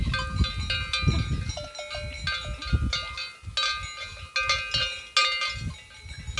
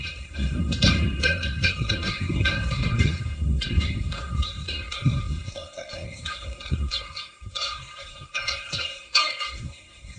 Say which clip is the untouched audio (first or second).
first